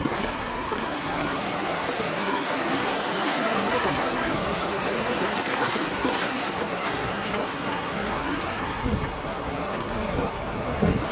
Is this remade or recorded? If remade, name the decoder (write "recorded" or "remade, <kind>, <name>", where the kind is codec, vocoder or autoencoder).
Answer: remade, codec, SNAC